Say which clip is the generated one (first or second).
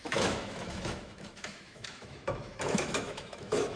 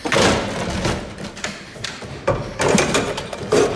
first